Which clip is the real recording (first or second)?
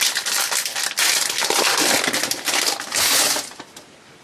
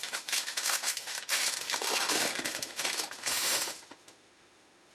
first